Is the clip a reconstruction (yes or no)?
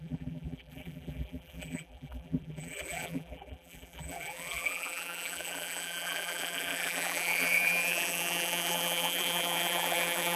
yes